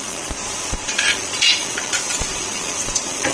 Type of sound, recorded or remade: remade